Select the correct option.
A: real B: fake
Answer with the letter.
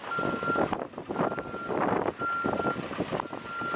A